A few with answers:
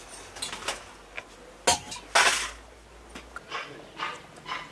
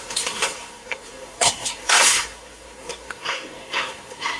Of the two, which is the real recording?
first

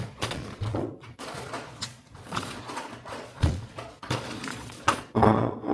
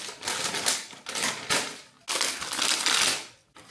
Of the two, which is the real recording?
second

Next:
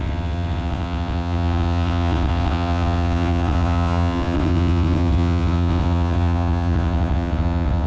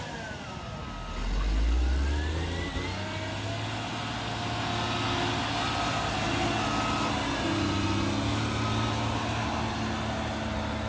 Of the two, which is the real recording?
second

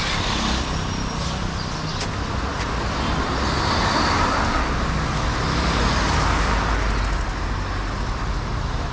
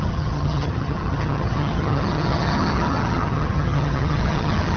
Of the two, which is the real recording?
first